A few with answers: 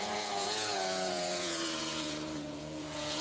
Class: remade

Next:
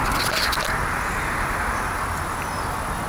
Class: recorded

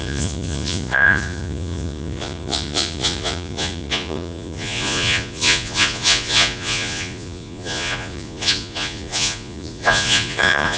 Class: remade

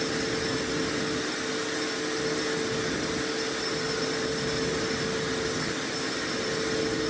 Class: recorded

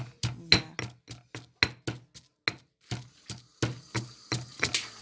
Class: recorded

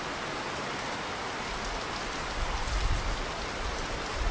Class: recorded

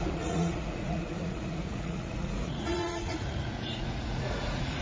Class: remade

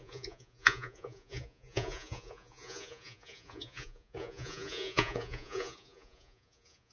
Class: remade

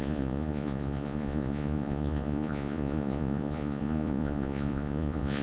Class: remade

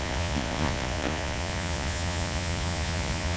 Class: remade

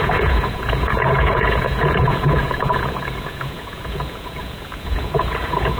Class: remade